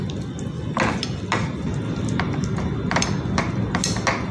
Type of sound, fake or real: real